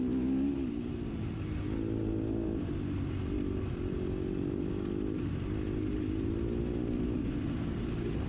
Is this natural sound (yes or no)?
yes